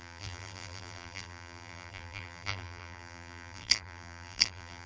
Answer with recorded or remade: remade